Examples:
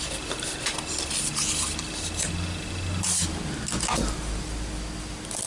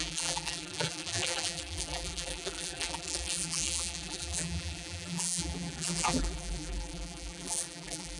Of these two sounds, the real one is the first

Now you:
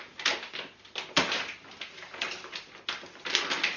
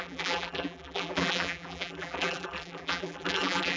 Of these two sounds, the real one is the first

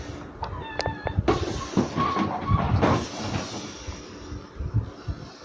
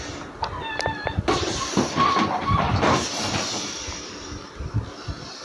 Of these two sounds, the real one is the first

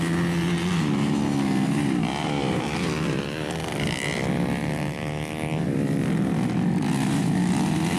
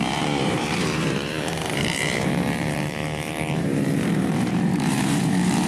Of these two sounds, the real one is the first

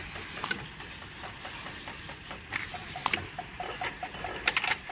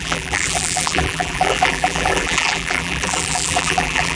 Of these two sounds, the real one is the first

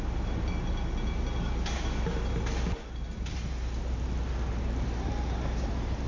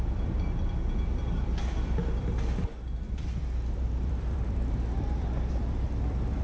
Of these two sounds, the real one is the first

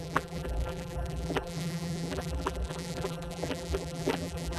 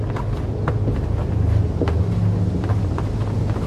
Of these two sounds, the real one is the second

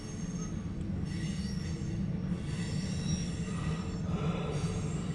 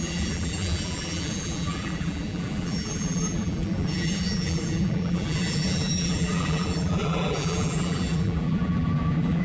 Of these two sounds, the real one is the first